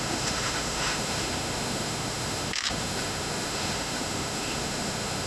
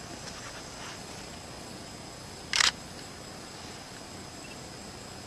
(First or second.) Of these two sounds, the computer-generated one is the first